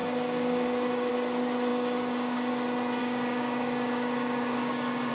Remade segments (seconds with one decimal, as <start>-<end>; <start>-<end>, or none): 0.0-1.1; 1.7-2.5; 3.0-5.1